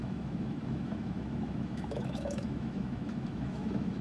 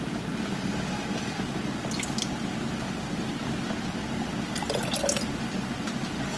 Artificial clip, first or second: first